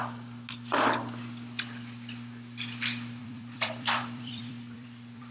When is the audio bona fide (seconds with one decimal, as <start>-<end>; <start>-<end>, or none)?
0.0-3.2